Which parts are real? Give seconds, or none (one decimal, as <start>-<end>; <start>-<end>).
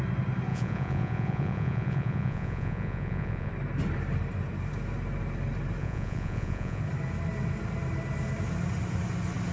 0.0-0.5; 3.5-5.8; 6.8-9.5